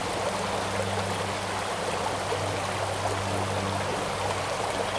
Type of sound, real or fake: real